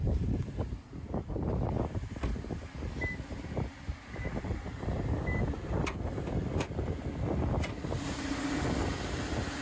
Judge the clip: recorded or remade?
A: recorded